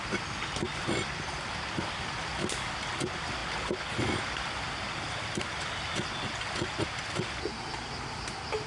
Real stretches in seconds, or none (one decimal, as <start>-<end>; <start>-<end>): 0.0-8.7